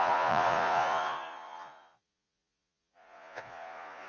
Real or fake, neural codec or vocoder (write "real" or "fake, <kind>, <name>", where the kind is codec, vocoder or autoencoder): fake, vocoder, Vocos